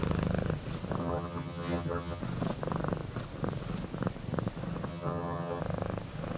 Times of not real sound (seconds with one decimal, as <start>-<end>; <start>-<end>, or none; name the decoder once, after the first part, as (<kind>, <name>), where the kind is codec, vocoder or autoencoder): 1.0-2.2 (vocoder, HiFi-GAN); 4.9-5.6